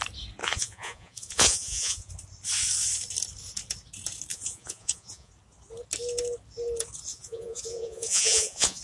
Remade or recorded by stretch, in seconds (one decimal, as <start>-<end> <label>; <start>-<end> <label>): 0.0-0.4 recorded; 0.4-2.1 remade; 2.1-4.3 recorded; 4.3-5.3 remade; 5.3-7.1 recorded; 7.1-8.8 remade